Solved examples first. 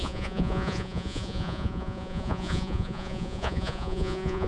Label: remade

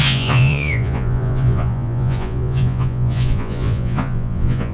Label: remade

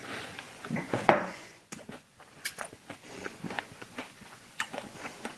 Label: remade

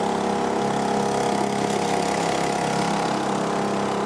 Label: recorded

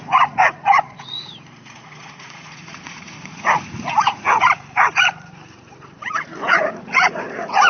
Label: remade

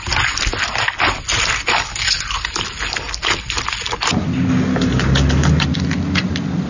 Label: recorded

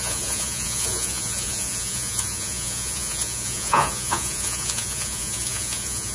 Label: remade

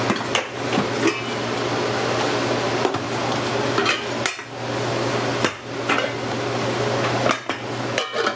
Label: recorded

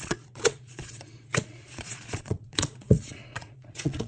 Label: remade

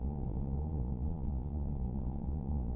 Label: remade